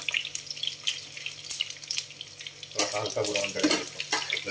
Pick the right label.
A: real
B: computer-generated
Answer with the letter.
A